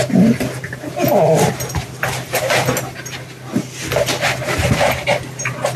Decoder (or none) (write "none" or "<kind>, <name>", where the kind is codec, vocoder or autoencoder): none